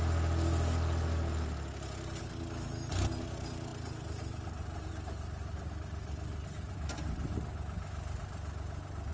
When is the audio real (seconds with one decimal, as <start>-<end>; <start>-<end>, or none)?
0.0-3.7; 5.7-9.1